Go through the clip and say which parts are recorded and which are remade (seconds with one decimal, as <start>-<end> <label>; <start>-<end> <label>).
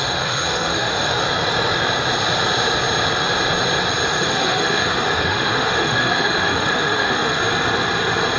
0.0-1.2 remade; 1.2-4.1 recorded; 4.1-7.4 remade; 7.4-8.4 recorded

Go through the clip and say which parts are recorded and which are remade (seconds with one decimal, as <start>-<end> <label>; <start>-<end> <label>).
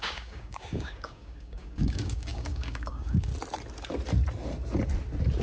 0.0-3.3 remade; 3.3-5.4 recorded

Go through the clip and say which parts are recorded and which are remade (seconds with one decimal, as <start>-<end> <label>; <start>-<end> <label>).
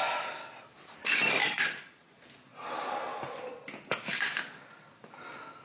0.0-1.4 recorded; 1.4-2.1 remade; 2.1-5.6 recorded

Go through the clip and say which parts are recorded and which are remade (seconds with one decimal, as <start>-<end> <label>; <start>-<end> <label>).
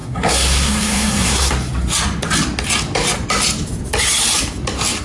0.0-1.5 remade; 1.5-5.0 recorded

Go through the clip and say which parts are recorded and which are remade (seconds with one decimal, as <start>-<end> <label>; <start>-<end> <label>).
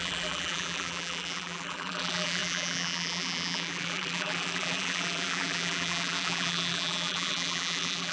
0.0-8.1 remade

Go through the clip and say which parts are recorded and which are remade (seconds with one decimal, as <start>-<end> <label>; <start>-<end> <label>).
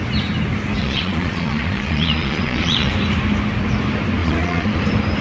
0.0-0.8 recorded; 0.8-2.9 remade; 2.9-4.2 recorded; 4.2-4.8 remade; 4.8-5.2 recorded